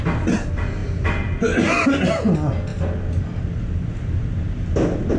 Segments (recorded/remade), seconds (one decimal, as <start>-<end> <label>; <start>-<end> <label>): 0.0-0.8 recorded; 0.8-1.4 remade; 1.4-5.2 recorded